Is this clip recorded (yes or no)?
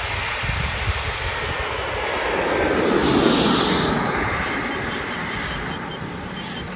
yes